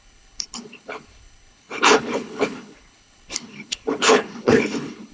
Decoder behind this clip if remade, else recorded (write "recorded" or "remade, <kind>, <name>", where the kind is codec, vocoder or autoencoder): remade, codec, HILCodec